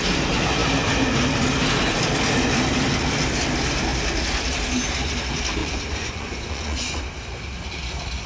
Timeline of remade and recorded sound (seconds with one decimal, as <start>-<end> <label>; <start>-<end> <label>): 0.0-5.6 recorded; 5.6-7.0 remade; 7.0-8.3 recorded

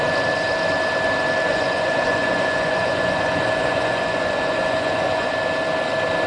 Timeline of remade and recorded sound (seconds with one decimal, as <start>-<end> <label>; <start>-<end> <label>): 0.0-1.5 recorded; 1.5-5.3 remade; 5.3-6.3 recorded

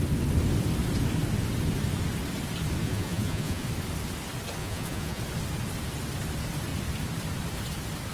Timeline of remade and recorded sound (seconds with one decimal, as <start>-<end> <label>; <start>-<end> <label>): 0.0-2.8 recorded; 2.8-3.7 remade; 3.7-4.6 recorded; 4.6-5.2 remade; 5.2-8.1 recorded